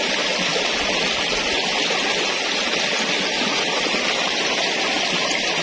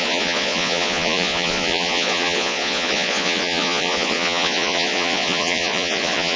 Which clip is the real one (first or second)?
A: first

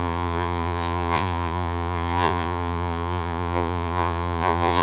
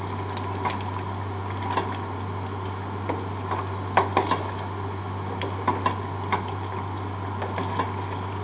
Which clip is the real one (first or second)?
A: second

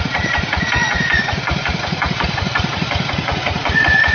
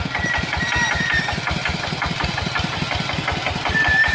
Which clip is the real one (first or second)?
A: second